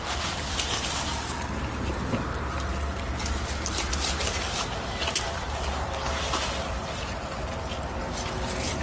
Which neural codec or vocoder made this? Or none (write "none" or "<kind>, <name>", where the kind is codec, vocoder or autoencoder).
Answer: none